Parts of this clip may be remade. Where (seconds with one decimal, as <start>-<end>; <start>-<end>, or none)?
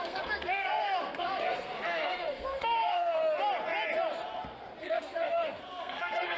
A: 0.0-3.2; 4.8-6.4